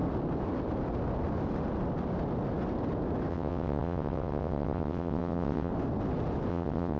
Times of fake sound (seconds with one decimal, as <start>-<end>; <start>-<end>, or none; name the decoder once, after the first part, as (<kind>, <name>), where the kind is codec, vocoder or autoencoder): 3.3-5.7 (vocoder, WaveNeXt); 6.5-7.0